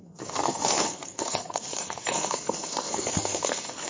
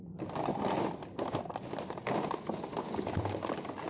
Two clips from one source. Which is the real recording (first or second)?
second